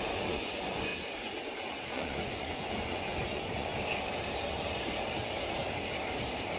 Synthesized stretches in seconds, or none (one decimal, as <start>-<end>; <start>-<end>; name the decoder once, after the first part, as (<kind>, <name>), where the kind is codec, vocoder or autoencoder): 0.0-0.9 (vocoder, Vocos); 1.9-3.7